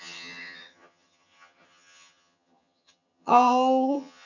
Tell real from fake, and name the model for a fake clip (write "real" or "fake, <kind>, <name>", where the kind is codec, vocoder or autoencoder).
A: fake, vocoder, HiFi-GAN